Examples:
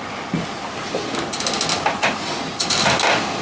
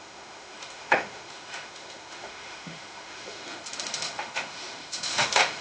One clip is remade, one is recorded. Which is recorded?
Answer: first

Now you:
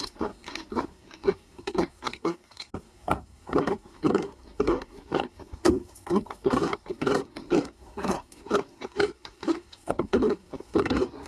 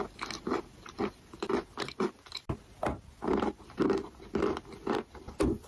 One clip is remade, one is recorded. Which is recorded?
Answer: second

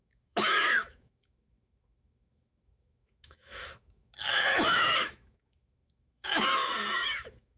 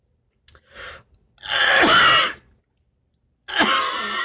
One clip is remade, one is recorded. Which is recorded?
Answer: second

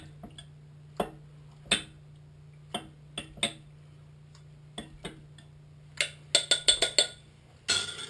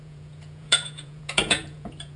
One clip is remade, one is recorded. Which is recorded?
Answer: first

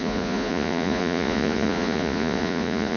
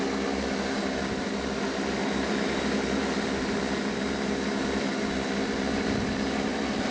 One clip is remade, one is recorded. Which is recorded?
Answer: second